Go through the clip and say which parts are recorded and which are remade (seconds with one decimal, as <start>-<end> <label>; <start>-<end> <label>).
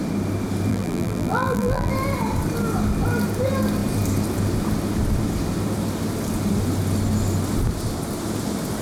0.0-0.7 recorded; 0.7-1.9 remade; 1.9-8.8 recorded